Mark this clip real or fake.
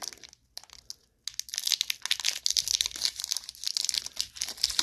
real